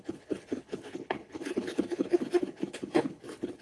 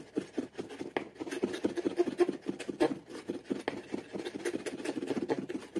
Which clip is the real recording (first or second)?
second